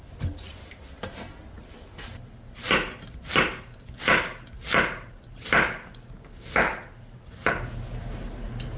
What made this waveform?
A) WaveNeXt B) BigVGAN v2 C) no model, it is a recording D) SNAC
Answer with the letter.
C